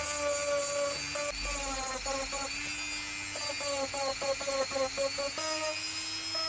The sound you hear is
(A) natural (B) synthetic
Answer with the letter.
A